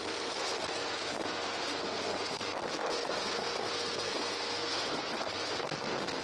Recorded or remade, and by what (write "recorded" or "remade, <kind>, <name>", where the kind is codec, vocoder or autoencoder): remade, codec, SNAC